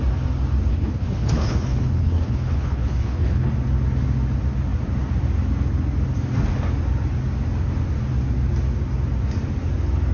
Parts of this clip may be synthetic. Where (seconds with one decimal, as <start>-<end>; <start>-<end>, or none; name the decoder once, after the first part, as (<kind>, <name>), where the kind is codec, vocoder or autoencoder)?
0.7-3.5 (codec, HILCodec)